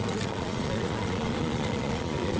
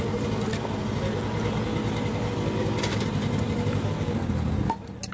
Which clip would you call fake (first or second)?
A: first